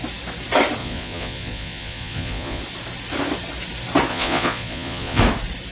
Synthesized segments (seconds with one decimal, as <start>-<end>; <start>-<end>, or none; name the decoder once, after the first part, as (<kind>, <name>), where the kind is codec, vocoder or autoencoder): 0.8-2.6 (vocoder, Vocos); 4.1-5.2